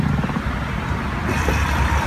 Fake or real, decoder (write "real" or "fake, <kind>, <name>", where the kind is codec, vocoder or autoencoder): real